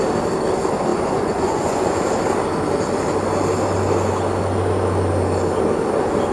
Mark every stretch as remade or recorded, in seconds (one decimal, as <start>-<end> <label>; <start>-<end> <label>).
0.0-0.9 recorded; 0.9-2.0 remade; 2.0-6.3 recorded